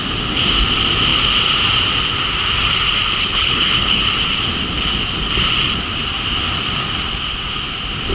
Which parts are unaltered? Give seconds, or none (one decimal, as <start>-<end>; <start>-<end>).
0.0-3.2; 4.0-8.1

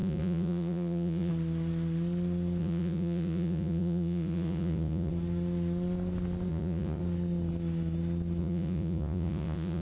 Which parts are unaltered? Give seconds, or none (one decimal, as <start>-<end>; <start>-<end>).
1.3-2.6; 5.1-6.5; 7.0-8.4

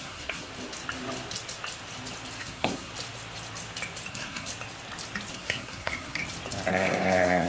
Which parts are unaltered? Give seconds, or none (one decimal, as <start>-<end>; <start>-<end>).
0.5-2.4; 2.9-4.1; 4.5-5.3; 6.2-6.7

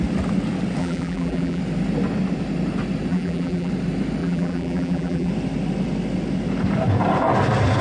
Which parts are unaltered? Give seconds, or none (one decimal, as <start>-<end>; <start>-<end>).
0.0-0.8; 1.6-3.1; 3.7-4.2; 5.3-7.8

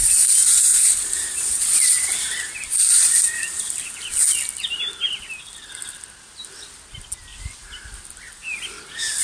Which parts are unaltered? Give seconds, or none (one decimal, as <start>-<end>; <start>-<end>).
3.8-7.3; 7.8-9.2

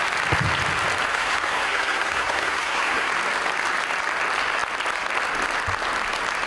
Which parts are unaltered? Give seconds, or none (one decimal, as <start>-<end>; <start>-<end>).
0.0-1.1; 3.1-6.5

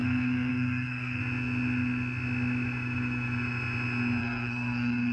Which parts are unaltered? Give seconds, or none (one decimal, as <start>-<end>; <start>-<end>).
1.2-4.2